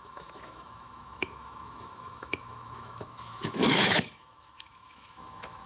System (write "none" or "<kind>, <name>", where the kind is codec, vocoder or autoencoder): autoencoder, DAC-VAE